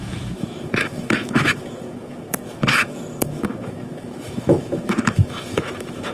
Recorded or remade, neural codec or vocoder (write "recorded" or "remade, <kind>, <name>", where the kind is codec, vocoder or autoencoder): remade, autoencoder, DAC-VAE